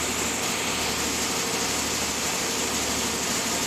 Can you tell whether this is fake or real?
real